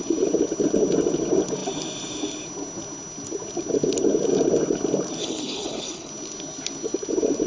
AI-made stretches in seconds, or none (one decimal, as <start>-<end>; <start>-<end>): 5.2-6.1